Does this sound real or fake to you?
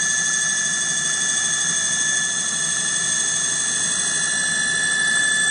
real